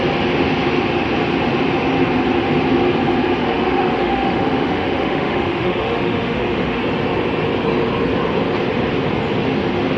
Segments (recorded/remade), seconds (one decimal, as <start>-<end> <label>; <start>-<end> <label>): 0.0-3.4 recorded; 3.4-6.8 remade; 6.8-10.0 recorded